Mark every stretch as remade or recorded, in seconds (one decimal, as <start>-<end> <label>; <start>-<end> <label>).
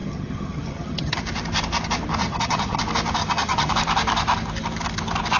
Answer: 0.0-1.2 remade; 1.2-2.2 recorded; 2.2-2.8 remade; 2.8-3.2 recorded; 3.2-3.7 remade; 3.7-5.4 recorded